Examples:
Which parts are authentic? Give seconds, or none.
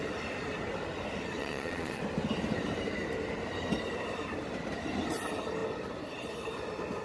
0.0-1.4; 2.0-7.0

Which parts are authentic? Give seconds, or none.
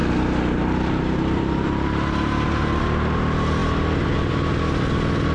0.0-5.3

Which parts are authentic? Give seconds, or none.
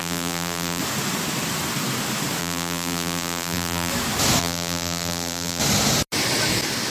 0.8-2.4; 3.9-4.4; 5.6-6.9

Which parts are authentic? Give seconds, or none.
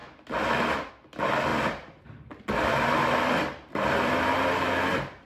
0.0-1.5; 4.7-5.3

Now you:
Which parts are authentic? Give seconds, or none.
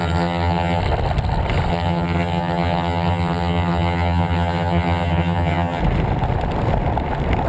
0.8-1.7; 5.8-7.5